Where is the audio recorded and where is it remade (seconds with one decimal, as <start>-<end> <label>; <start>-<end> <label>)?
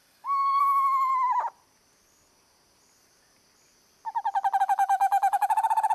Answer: 0.0-1.1 remade; 1.1-4.6 recorded; 4.6-5.9 remade